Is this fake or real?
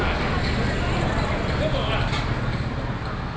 real